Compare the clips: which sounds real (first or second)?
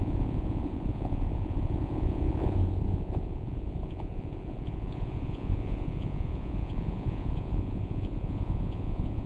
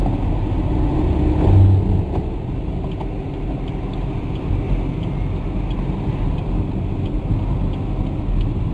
second